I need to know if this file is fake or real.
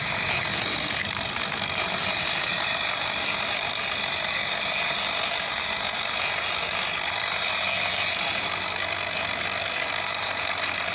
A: real